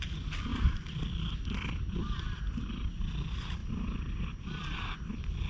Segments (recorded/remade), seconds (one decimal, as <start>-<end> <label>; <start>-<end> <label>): 0.0-5.5 recorded